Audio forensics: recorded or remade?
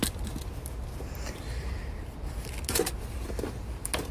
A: recorded